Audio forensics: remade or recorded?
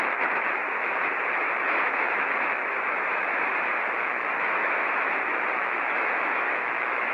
remade